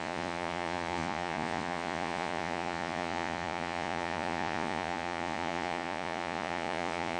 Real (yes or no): no